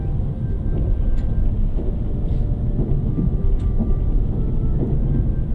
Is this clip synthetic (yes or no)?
no